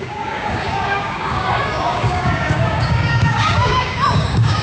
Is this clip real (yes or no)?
no